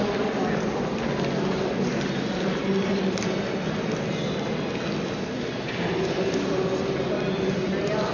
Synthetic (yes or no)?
no